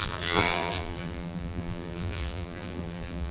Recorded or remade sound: remade